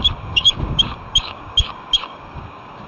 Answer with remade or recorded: remade